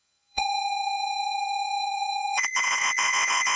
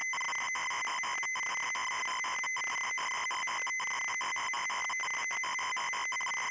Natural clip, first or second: second